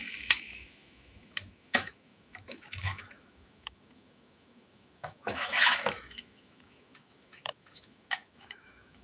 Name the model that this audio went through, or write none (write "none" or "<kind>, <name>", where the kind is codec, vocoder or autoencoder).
autoencoder, DAC-VAE